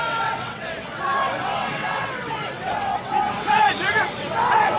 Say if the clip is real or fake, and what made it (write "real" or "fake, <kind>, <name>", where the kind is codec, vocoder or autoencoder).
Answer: fake, vocoder, WaveNeXt